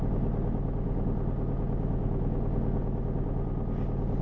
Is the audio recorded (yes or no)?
yes